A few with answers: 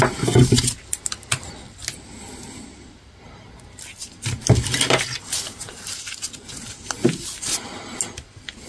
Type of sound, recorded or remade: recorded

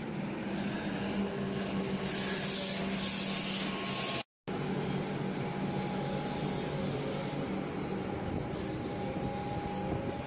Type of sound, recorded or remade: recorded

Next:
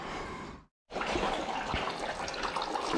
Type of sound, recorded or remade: recorded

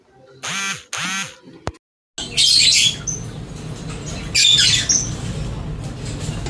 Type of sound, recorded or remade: recorded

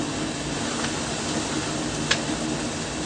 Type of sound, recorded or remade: recorded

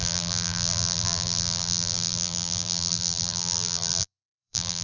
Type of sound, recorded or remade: remade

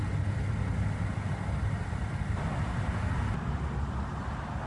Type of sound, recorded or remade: remade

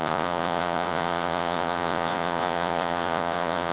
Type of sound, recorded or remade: remade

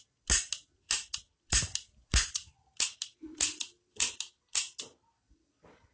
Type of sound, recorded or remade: recorded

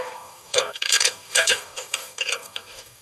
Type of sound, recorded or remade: remade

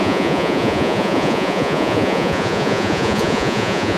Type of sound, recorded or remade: remade